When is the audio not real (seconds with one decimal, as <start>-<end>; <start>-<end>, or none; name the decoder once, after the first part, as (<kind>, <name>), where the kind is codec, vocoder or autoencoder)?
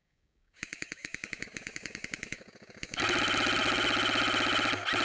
0.0-3.0 (codec, DAC)